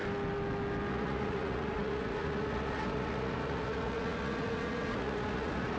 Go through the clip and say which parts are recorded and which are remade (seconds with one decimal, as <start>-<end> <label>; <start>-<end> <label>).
0.0-0.9 recorded; 0.9-5.8 remade